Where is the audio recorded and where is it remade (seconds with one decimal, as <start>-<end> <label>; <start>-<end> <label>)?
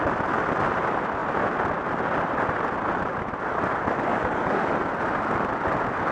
0.0-4.1 recorded; 4.1-4.7 remade; 4.7-6.1 recorded